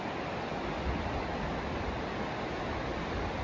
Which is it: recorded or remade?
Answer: recorded